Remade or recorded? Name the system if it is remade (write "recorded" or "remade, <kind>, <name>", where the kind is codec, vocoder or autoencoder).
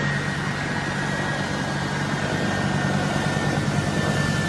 recorded